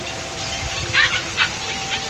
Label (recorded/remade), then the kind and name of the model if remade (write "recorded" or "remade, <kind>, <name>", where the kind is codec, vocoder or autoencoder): recorded